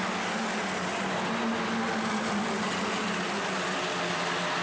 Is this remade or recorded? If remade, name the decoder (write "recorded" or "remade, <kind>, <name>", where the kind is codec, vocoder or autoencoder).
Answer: recorded